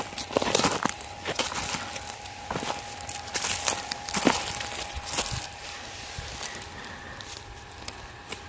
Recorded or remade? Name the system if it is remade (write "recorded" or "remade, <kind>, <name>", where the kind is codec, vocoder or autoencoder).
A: recorded